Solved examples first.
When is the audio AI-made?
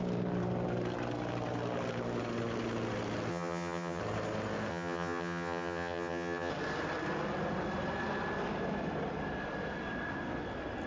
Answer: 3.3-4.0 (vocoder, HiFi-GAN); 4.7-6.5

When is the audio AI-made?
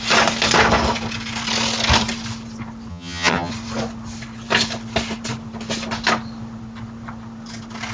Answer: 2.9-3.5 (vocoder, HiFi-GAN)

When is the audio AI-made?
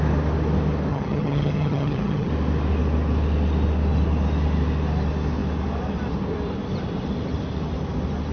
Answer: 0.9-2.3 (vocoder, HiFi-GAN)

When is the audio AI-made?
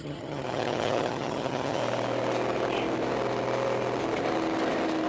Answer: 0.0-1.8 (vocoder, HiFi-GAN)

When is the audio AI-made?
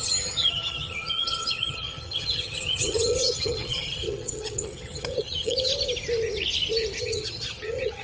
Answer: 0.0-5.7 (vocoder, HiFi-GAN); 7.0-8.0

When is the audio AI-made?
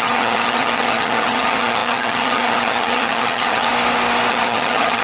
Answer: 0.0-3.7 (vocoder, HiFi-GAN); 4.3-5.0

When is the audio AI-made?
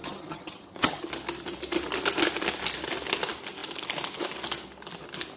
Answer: 0.0-1.1 (vocoder, HiFi-GAN)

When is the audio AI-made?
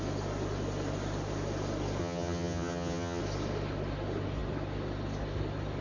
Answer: 2.0-3.2 (vocoder, HiFi-GAN)